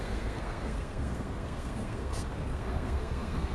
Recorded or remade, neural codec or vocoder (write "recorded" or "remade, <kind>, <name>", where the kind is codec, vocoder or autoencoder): remade, codec, SNAC